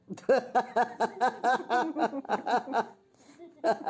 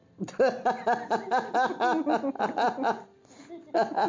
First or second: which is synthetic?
first